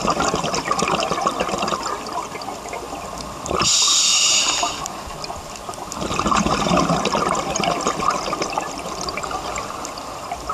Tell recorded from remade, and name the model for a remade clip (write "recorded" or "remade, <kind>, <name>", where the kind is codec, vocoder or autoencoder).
remade, vocoder, BigVGAN v2